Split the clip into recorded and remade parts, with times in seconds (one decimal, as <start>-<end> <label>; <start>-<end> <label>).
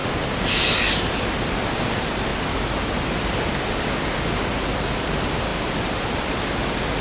0.0-1.8 recorded; 1.8-2.3 remade; 2.3-5.0 recorded; 5.0-7.0 remade